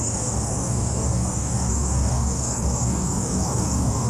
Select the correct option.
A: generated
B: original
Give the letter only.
A